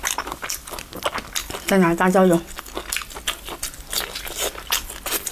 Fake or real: real